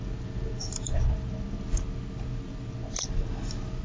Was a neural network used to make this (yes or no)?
no